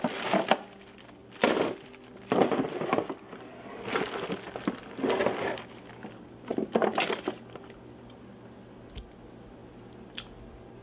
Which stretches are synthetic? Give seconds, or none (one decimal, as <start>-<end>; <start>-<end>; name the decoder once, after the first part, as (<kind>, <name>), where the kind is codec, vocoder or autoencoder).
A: none